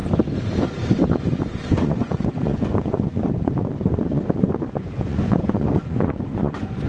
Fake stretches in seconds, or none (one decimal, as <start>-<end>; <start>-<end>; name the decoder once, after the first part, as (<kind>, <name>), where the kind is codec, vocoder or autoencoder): 1.7-6.9 (vocoder, Vocos)